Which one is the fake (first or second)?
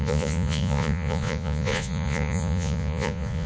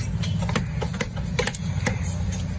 first